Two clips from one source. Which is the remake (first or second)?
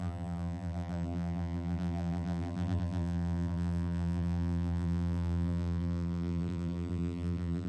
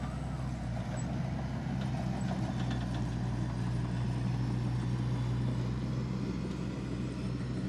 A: first